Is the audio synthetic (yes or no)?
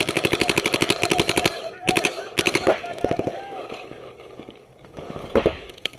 yes